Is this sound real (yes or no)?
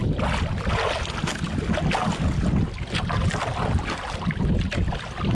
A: yes